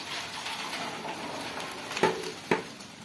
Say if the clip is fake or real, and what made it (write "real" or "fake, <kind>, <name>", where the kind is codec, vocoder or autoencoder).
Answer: real